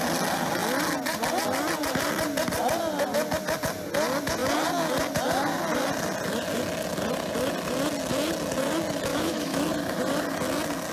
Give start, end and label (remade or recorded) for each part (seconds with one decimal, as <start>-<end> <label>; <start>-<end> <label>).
0.0-9.1 recorded; 9.1-9.6 remade; 9.6-10.9 recorded